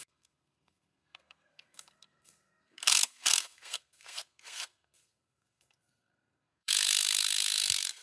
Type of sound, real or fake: fake